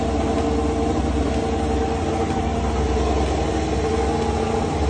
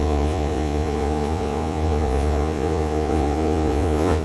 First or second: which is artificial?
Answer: second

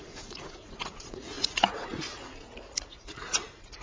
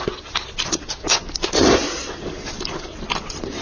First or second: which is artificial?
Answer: first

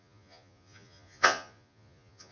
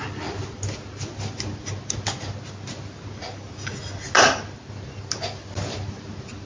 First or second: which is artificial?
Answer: first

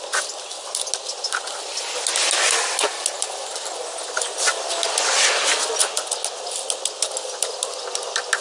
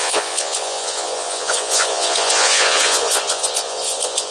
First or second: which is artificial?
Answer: second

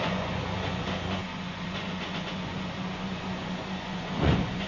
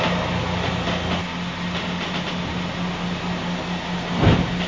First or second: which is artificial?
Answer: first